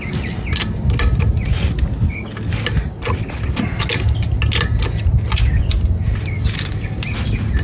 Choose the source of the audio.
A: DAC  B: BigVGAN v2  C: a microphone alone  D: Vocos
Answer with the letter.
C